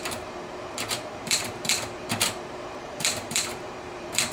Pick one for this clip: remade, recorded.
remade